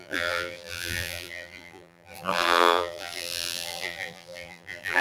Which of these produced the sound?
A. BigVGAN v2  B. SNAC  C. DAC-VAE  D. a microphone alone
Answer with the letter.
A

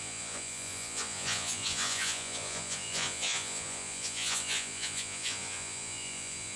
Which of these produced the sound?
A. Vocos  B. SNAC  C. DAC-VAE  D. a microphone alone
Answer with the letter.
A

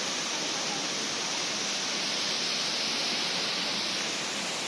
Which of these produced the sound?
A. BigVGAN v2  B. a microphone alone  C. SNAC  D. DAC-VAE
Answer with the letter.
B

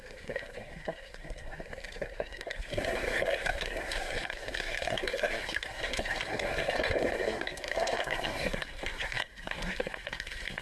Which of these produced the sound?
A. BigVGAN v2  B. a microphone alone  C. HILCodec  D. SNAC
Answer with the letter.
D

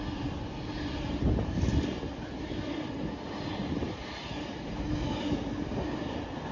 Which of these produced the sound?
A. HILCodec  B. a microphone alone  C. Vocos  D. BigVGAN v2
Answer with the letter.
B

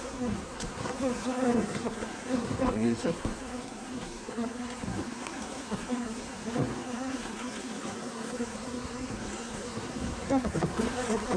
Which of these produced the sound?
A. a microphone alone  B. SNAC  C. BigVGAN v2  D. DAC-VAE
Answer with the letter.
B